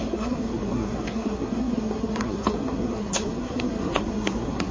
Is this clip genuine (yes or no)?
no